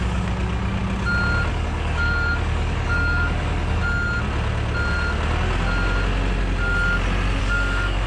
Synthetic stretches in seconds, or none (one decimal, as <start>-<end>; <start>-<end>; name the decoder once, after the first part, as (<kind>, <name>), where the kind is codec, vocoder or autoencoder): 0.0-0.8 (codec, DAC); 1.5-3.8; 7.4-8.1